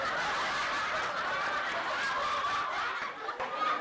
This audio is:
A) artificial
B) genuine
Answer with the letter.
B